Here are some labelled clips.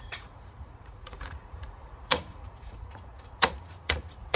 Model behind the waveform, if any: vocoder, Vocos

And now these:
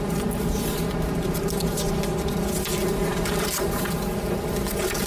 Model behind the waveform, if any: none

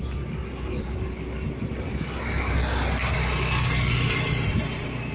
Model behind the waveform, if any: none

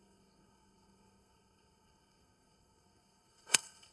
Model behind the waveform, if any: codec, SNAC